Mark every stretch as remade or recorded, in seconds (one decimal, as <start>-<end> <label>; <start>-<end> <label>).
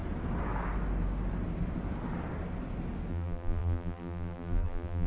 0.0-3.1 recorded; 3.1-5.1 remade